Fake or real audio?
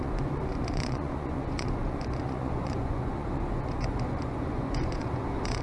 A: fake